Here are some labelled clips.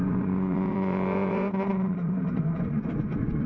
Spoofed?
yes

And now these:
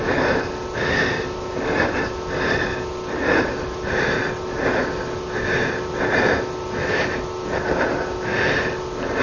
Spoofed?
no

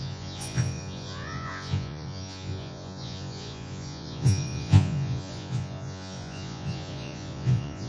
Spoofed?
yes